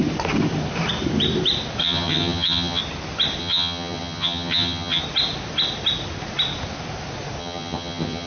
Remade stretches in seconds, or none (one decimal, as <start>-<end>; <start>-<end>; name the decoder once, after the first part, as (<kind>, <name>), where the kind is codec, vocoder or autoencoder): 1.8-2.8 (vocoder, HiFi-GAN); 3.4-5.0; 7.4-8.3